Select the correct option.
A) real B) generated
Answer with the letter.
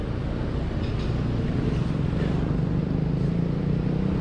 A